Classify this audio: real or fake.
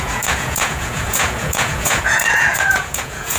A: fake